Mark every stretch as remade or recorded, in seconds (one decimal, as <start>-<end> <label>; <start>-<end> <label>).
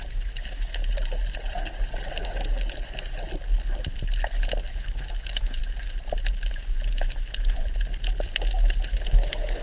0.0-0.8 remade; 0.8-4.8 recorded; 4.8-5.6 remade; 5.6-6.5 recorded; 6.5-7.6 remade; 7.6-9.0 recorded; 9.0-9.6 remade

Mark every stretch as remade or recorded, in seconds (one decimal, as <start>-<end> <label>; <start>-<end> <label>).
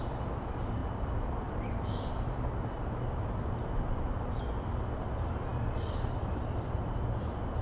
0.0-0.8 recorded; 0.8-4.4 remade; 4.4-7.6 recorded